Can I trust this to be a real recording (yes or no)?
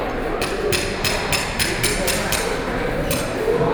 yes